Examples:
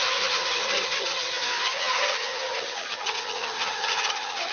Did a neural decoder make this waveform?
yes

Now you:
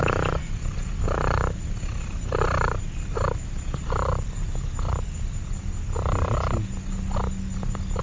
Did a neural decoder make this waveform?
no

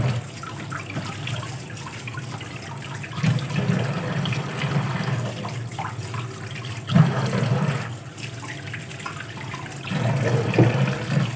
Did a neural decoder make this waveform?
no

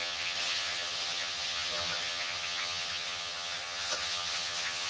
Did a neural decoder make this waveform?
yes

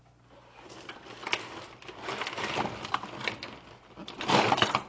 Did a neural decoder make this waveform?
no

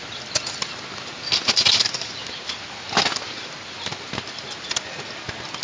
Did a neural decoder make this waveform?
no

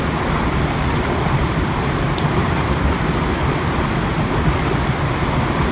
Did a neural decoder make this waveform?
no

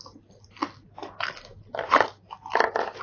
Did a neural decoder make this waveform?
no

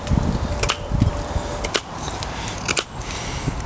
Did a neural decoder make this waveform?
no